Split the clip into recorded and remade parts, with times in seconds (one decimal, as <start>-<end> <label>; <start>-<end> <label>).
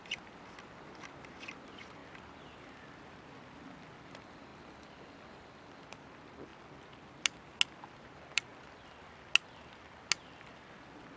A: 0.0-2.0 remade; 2.0-4.1 recorded; 4.1-4.5 remade; 4.5-5.4 recorded; 5.4-6.5 remade; 6.5-8.0 recorded; 8.0-8.5 remade; 8.5-11.2 recorded